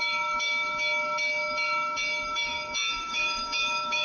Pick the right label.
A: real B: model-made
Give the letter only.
B